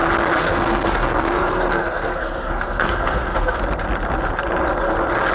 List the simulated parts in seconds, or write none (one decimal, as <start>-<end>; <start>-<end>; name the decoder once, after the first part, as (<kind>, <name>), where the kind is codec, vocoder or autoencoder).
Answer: 0.4-3.6 (codec, SNAC)